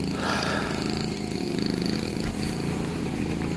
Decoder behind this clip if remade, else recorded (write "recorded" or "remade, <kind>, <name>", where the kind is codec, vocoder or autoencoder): recorded